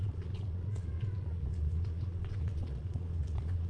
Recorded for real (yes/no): no